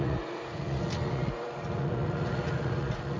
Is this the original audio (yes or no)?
no